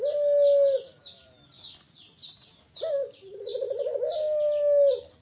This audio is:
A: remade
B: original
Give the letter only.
B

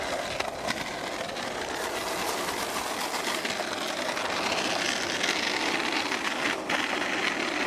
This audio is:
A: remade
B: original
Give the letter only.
B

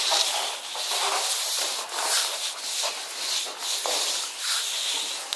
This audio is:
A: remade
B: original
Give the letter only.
B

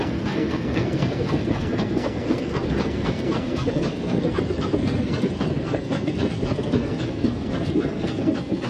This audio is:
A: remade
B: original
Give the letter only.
A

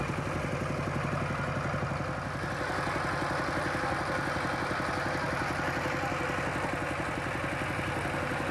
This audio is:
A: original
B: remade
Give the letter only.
A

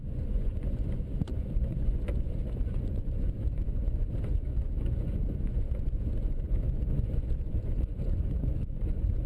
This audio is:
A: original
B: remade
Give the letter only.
B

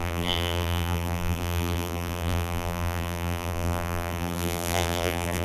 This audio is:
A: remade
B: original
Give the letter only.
A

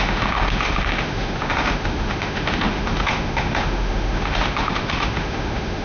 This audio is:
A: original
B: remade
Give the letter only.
B